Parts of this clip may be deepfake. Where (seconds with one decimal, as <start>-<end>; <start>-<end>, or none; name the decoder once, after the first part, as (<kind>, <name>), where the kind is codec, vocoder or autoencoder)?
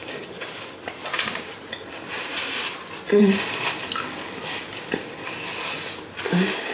0.0-0.5 (codec, DAC)